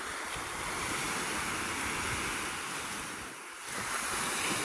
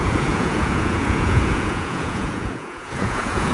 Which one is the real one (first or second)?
first